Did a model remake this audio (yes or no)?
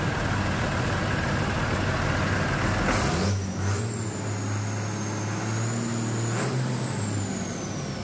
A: no